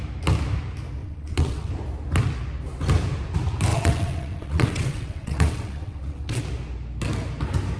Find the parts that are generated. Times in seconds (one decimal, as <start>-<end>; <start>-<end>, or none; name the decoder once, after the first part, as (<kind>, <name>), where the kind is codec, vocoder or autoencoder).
1.0-1.7 (vocoder, WaveNeXt); 3.7-6.4